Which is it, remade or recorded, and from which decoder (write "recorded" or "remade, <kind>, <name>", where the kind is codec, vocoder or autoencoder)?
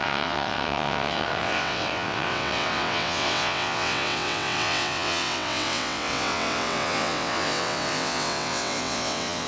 remade, vocoder, WaveNeXt